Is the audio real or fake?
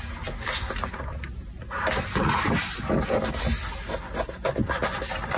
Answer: real